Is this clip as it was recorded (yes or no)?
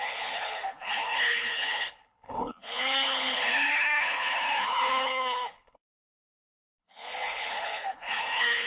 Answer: no